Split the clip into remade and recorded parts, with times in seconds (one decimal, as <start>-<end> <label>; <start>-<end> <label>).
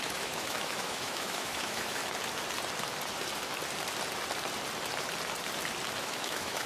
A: 0.0-2.0 remade; 2.0-6.0 recorded; 6.0-6.7 remade